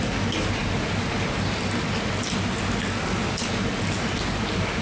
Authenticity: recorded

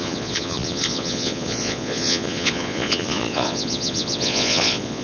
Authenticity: remade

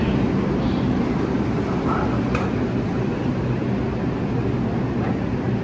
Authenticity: recorded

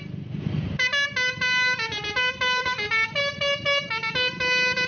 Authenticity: recorded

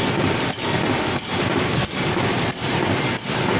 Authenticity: recorded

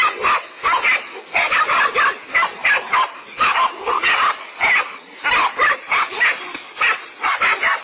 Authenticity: recorded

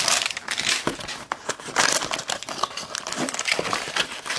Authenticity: recorded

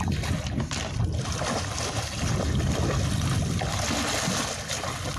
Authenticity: recorded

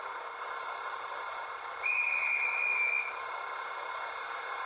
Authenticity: recorded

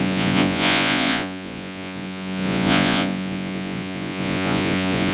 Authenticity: remade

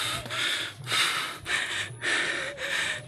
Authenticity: recorded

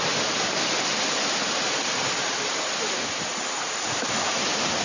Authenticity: recorded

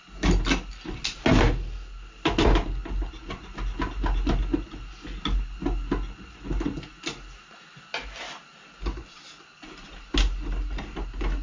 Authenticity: recorded